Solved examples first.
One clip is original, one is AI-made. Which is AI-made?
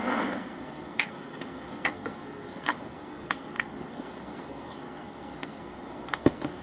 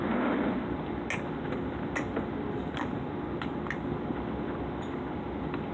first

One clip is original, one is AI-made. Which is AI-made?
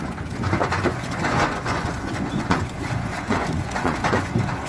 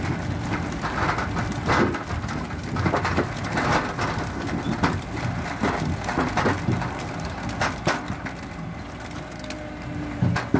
first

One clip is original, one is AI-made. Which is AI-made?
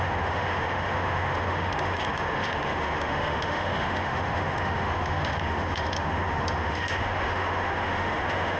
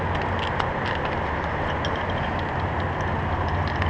first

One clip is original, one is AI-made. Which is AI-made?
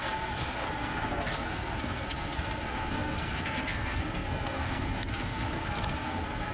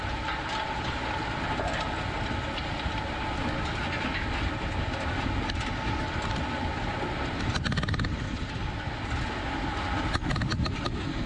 first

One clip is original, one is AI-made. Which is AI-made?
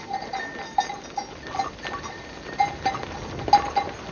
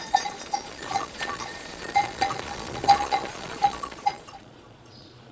second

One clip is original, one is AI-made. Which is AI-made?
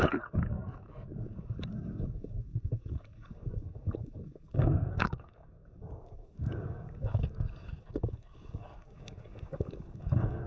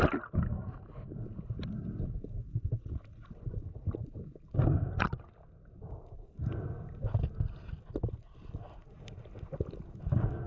first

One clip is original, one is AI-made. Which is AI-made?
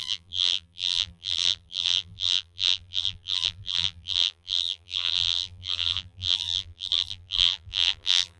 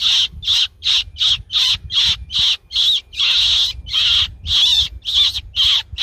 first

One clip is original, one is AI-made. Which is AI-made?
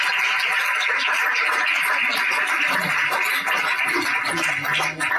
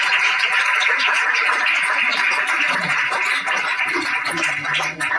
second